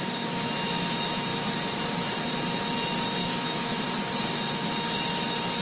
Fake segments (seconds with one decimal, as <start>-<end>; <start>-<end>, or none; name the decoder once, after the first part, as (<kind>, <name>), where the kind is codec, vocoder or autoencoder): 3.2-3.8 (autoencoder, DAC-VAE)